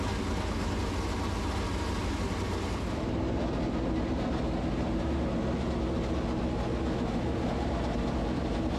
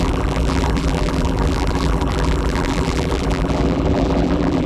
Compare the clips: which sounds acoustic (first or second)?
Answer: first